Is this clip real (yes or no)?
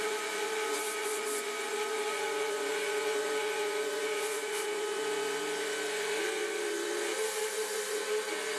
no